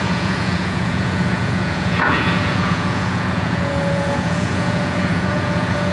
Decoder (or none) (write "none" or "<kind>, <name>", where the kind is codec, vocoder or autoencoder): vocoder, Vocos